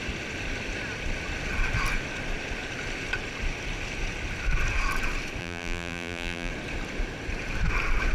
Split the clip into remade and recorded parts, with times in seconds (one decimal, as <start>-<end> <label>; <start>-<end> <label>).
0.0-5.4 recorded; 5.4-6.5 remade; 6.5-8.1 recorded